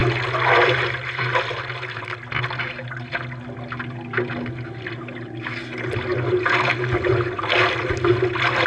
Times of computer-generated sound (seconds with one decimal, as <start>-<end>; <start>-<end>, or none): none